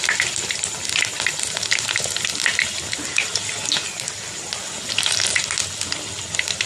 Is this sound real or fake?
real